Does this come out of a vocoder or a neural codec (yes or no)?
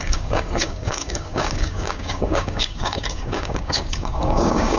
yes